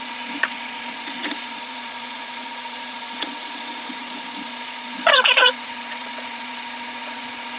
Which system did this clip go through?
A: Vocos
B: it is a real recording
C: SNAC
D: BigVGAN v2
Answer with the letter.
A